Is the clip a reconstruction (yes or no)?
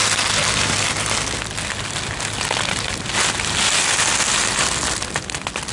no